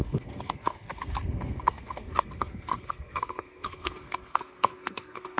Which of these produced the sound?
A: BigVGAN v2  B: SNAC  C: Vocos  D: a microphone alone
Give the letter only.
B